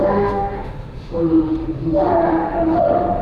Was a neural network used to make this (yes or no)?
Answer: yes